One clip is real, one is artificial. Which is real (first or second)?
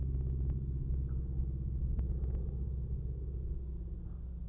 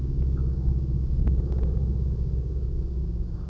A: first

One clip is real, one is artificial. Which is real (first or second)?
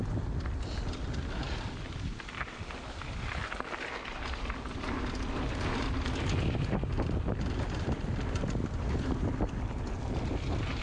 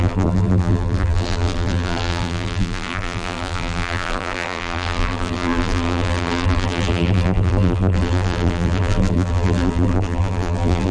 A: first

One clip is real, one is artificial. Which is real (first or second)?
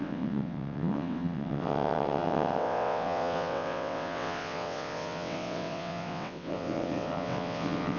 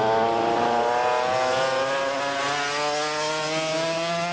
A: second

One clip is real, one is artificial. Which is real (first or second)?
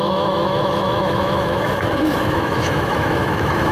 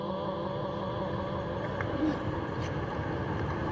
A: second